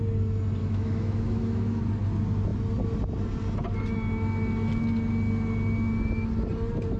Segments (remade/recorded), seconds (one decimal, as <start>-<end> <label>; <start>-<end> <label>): 0.0-0.6 recorded; 0.6-1.8 remade; 1.8-7.0 recorded

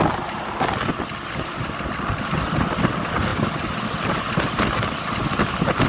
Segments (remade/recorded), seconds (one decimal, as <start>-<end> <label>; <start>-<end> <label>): 0.0-5.9 recorded

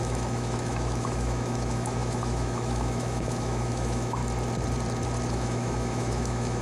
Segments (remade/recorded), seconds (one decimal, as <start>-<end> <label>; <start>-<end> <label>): 0.0-4.2 remade; 4.2-5.3 recorded; 5.3-6.6 remade

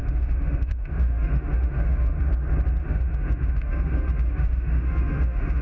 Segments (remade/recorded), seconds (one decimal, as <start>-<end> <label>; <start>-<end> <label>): 0.0-2.3 remade; 2.3-2.8 recorded; 2.8-5.6 remade

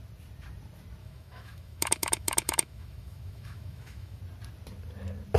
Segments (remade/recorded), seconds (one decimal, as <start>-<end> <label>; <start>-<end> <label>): 0.0-1.0 recorded; 1.0-4.2 remade; 4.2-5.4 recorded

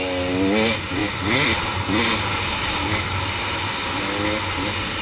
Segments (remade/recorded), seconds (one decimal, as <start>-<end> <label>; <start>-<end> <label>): 0.0-5.0 recorded

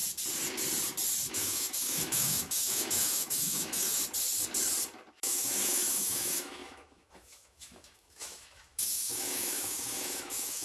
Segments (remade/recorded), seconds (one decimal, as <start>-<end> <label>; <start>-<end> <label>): 0.0-1.3 recorded; 1.3-4.0 remade; 4.0-5.1 recorded; 5.1-10.6 remade

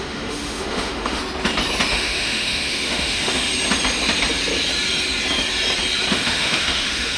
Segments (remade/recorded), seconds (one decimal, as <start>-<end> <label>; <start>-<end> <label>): 0.0-1.2 remade; 1.2-1.9 recorded; 1.9-3.5 remade; 3.5-6.1 recorded; 6.1-7.2 remade